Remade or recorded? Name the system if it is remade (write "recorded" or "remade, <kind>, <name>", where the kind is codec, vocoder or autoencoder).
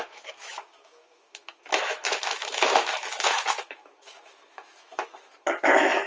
remade, autoencoder, DAC-VAE